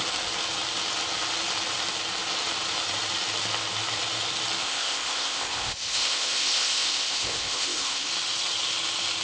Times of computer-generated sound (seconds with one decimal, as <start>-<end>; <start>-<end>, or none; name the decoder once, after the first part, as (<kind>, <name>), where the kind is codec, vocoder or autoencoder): 4.6-8.1 (codec, ZipCodec)